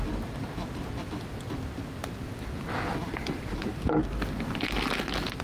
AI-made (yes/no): no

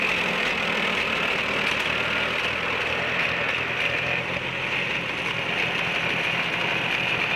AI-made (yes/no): no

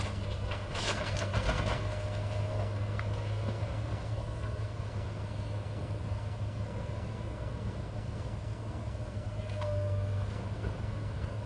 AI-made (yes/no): yes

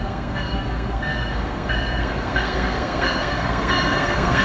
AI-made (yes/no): yes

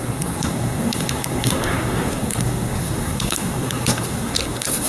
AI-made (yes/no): yes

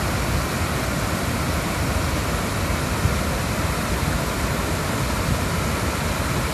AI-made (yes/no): no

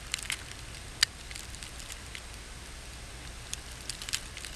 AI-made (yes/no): no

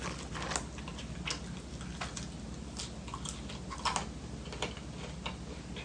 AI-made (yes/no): no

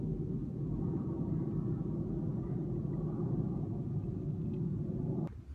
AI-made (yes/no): no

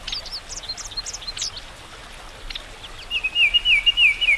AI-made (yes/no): no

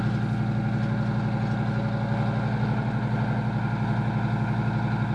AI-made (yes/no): no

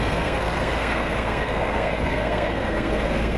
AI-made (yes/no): yes